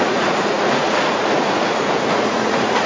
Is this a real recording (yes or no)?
no